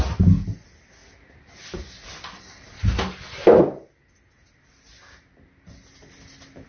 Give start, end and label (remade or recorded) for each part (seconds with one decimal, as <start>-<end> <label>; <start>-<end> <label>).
0.0-6.7 recorded